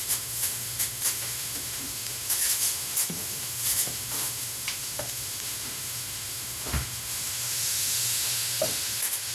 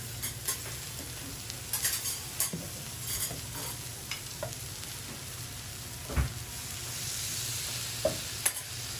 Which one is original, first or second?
second